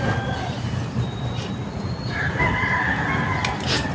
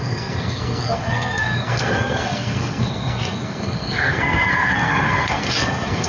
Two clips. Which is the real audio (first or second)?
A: first